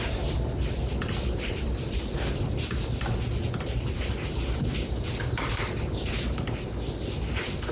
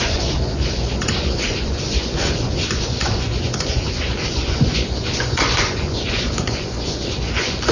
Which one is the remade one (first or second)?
second